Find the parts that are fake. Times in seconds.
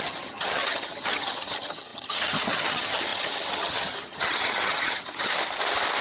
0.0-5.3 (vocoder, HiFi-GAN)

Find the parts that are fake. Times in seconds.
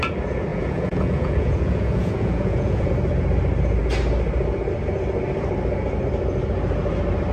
0.5-2.9 (vocoder, Vocos)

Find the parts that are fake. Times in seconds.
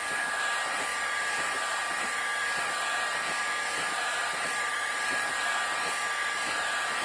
none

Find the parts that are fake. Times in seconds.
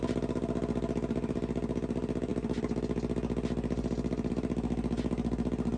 none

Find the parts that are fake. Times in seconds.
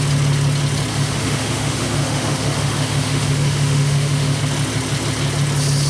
0.9-4.4 (autoencoder, DAC-VAE)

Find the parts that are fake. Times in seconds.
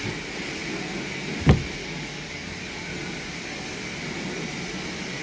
1.8-2.6 (codec, DAC)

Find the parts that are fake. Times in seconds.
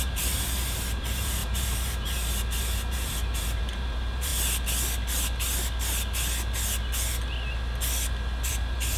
0.0-4.3 (vocoder, BigVGAN v2); 8.5-9.0